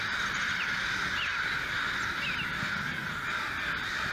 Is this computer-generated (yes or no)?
no